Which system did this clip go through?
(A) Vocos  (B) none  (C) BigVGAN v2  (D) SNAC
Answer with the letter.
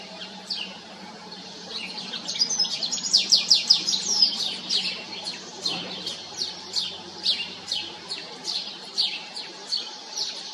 C